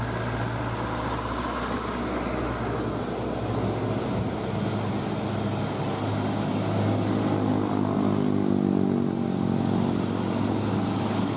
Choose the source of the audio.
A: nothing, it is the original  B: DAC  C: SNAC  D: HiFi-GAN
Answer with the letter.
A